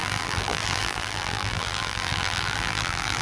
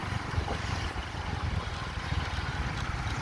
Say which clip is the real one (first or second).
second